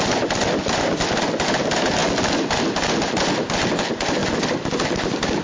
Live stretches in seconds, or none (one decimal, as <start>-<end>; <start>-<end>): 0.0-5.4